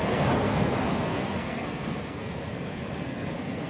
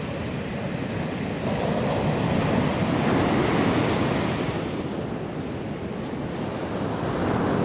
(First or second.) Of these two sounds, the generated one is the first